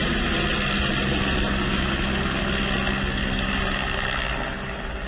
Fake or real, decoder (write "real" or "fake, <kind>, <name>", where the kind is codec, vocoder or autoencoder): real